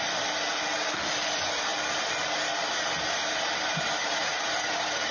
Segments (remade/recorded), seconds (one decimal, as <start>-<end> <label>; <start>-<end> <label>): 0.0-1.7 remade; 1.7-4.4 recorded; 4.4-5.1 remade